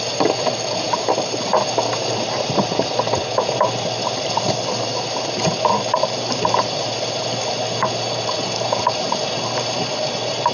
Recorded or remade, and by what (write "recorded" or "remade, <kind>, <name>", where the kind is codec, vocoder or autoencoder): recorded